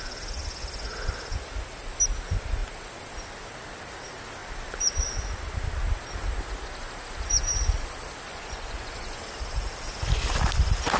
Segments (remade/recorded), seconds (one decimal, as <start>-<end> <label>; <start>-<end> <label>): 0.0-8.3 recorded; 8.3-9.2 remade; 9.2-11.0 recorded

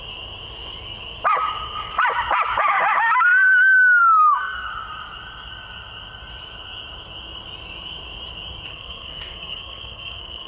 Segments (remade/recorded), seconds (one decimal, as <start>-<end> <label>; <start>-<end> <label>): 0.0-4.0 recorded; 4.0-4.7 remade; 4.7-8.7 recorded; 8.7-10.5 remade

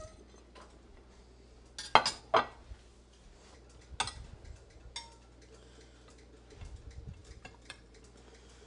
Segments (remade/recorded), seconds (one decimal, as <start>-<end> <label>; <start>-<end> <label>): 0.0-7.2 recorded; 7.2-8.0 remade; 8.0-8.7 recorded

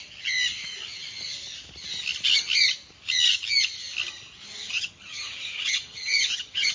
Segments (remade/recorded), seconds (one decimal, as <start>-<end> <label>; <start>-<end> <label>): 0.0-4.6 recorded; 4.6-6.7 remade

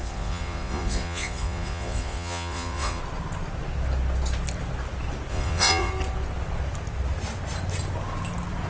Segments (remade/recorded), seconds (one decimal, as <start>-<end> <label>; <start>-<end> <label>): 0.0-3.0 remade; 3.0-5.3 recorded; 5.3-5.9 remade; 5.9-8.7 recorded

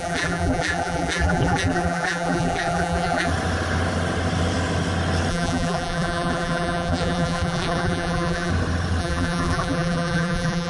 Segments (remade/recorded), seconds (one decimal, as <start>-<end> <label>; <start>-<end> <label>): 0.0-3.3 remade; 3.3-5.3 recorded; 5.3-8.5 remade; 8.5-9.0 recorded; 9.0-10.7 remade